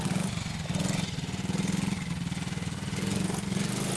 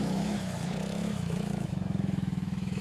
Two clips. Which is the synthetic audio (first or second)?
second